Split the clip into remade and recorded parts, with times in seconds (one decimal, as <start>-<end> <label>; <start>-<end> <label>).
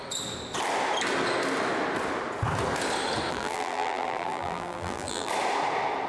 0.0-3.3 recorded; 3.3-5.3 remade; 5.3-6.1 recorded